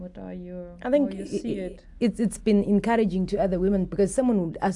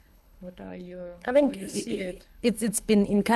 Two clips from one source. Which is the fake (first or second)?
second